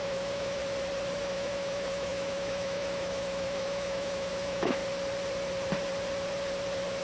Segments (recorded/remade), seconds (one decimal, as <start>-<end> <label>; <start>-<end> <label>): 0.0-0.6 remade; 0.6-1.2 recorded; 1.2-4.8 remade; 4.8-7.0 recorded